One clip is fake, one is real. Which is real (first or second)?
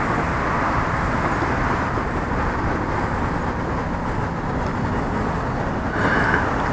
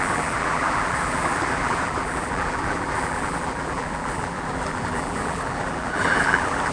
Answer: first